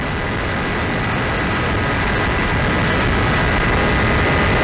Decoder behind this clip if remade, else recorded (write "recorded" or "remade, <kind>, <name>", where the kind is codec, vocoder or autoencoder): recorded